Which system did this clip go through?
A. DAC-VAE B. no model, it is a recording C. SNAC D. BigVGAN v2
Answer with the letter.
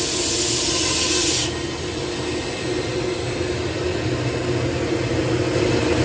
B